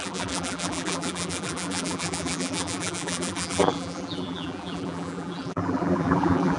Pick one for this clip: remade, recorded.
remade